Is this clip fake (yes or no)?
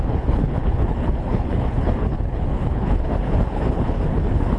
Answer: yes